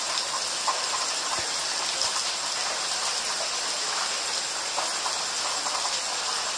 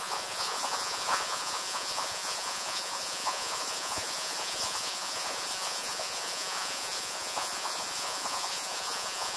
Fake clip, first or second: second